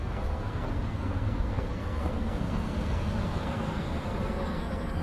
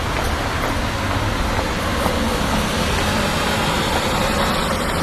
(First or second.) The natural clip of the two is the second